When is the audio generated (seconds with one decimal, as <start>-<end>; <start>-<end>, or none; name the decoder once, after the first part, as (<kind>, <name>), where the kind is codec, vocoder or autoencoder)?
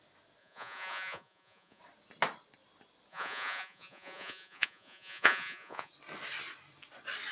0.4-1.8 (vocoder, Vocos); 3.1-5.9